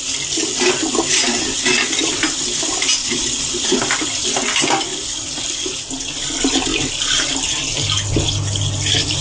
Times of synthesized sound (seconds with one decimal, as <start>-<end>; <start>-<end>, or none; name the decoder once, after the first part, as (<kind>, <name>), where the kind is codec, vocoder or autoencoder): 3.0-3.8 (vocoder, Vocos)